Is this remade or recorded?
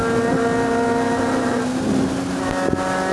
recorded